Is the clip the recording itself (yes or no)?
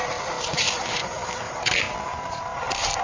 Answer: no